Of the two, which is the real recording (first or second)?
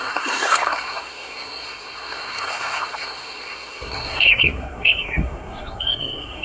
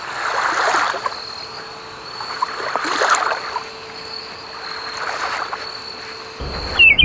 second